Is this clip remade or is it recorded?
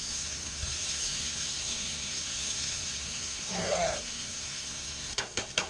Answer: remade